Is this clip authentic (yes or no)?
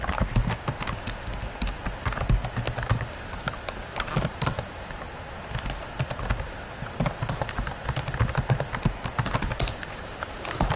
yes